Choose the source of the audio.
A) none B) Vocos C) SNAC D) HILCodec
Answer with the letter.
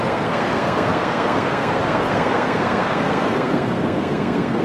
C